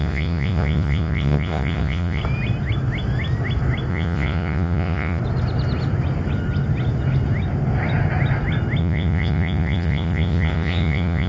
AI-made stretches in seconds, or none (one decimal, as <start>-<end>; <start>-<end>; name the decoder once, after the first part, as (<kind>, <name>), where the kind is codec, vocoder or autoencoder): 0.0-2.2 (vocoder, Vocos); 3.9-5.2; 8.8-11.3